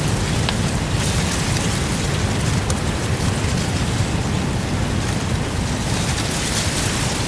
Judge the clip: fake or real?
real